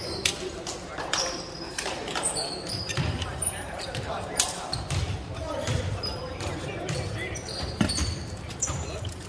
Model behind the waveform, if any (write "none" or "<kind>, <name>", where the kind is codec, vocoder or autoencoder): vocoder, BigVGAN v2